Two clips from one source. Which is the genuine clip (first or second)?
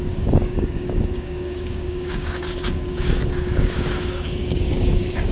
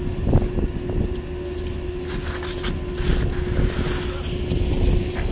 second